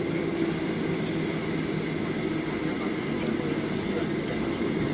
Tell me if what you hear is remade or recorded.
recorded